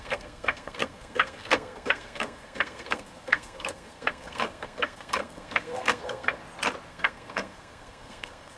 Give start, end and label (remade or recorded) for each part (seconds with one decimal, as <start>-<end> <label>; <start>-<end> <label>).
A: 0.0-6.4 remade; 6.4-6.9 recorded; 6.9-8.6 remade